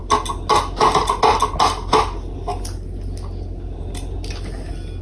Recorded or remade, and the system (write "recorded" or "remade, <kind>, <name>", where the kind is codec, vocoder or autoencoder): recorded